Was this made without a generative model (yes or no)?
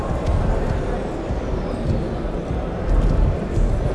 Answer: yes